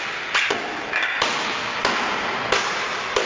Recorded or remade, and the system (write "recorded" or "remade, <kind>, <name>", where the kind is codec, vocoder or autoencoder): recorded